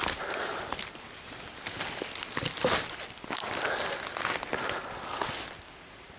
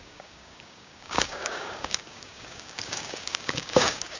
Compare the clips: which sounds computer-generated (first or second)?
second